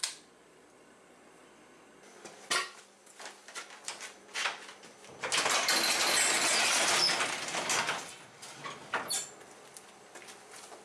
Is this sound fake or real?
real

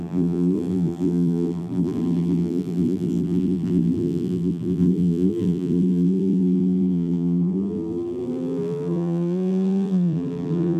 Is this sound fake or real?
fake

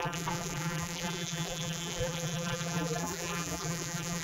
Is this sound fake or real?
fake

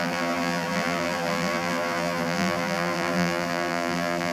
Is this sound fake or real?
fake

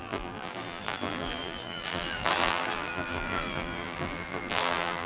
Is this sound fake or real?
fake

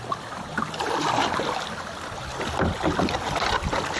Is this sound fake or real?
real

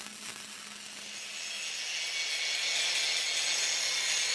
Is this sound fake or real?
real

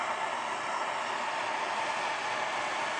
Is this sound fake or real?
real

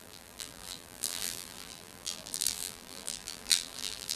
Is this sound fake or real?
fake